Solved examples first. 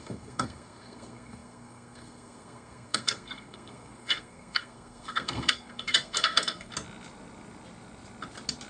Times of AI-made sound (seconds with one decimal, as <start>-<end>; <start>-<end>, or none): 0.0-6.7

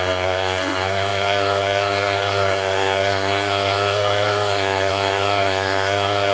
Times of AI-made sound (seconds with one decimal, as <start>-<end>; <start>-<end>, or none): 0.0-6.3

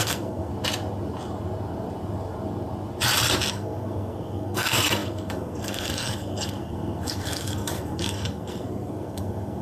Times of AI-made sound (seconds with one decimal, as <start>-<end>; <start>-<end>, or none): 0.0-0.5; 3.5-9.6